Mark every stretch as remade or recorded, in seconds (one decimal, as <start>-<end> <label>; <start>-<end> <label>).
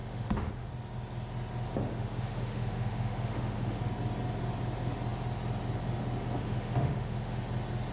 0.0-0.7 remade; 0.7-1.9 recorded; 1.9-3.8 remade; 3.8-6.4 recorded; 6.4-7.4 remade; 7.4-7.9 recorded